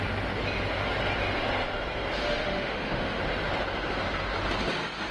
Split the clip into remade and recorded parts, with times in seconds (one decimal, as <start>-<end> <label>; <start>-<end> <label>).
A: 0.0-2.2 recorded; 2.2-3.2 remade; 3.2-5.1 recorded